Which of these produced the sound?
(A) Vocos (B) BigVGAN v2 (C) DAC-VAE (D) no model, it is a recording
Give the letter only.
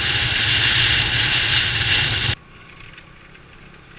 D